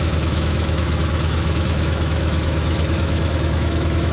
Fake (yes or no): yes